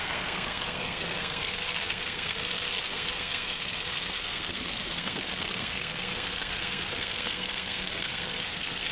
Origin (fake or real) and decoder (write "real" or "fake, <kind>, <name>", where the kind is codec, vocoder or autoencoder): fake, codec, SNAC